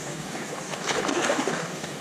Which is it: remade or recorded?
remade